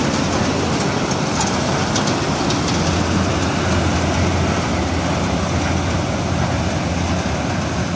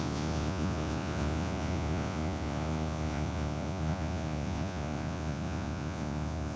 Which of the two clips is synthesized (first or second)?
second